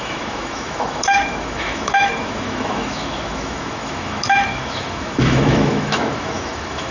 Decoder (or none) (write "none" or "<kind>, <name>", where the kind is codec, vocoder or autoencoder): autoencoder, DAC-VAE